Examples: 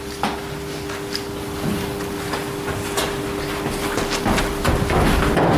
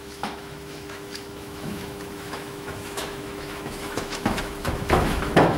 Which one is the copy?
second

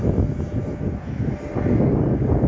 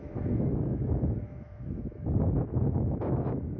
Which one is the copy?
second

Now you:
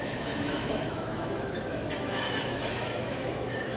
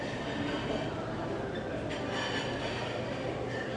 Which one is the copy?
first